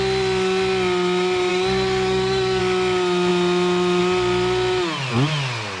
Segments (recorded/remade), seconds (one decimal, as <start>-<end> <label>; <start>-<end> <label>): 0.0-1.5 recorded; 1.5-2.6 remade; 2.6-5.8 recorded